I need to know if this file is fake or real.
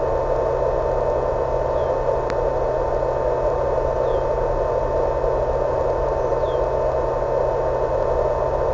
real